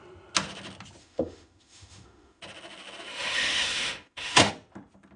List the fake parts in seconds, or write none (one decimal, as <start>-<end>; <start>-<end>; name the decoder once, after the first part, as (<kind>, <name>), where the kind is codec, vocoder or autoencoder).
1.0-2.4 (autoencoder, DAC-VAE); 3.1-4.5